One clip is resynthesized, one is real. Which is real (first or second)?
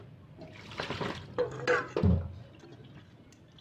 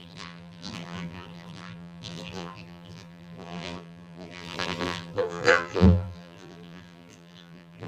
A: first